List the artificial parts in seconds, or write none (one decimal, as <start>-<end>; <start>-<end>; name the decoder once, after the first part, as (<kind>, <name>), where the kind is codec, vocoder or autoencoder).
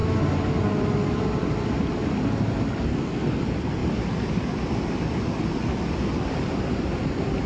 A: 2.9-3.4 (codec, SNAC)